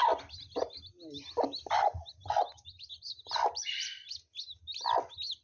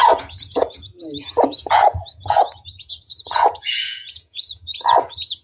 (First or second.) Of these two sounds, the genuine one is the first